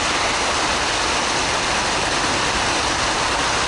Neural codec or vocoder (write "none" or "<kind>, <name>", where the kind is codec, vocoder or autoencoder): none